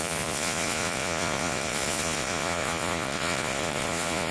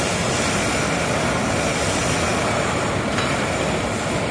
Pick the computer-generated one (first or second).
first